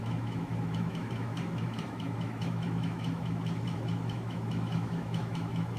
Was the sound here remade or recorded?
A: remade